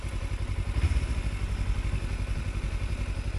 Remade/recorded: recorded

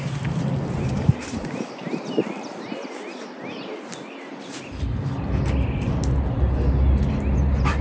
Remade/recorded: recorded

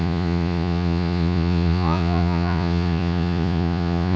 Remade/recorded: remade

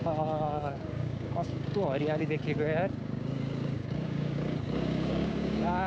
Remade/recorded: remade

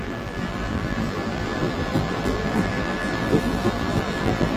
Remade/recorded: remade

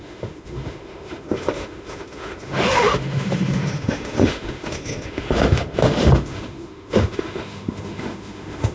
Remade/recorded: remade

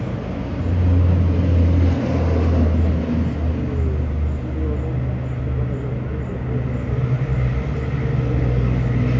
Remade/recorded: recorded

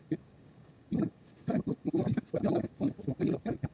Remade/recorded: remade